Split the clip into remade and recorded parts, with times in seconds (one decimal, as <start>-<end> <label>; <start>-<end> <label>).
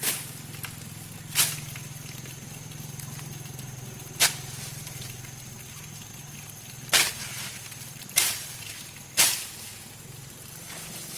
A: 0.0-7.5 recorded; 7.5-8.7 remade; 8.7-11.2 recorded